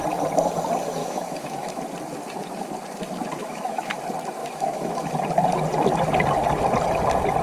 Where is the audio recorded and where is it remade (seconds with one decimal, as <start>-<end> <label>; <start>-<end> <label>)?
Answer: 0.0-1.0 recorded; 1.0-1.8 remade; 1.8-3.4 recorded; 3.4-4.0 remade; 4.0-4.4 recorded; 4.4-5.1 remade; 5.1-7.4 recorded